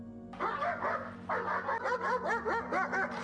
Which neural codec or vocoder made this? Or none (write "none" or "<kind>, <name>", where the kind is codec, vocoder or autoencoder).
none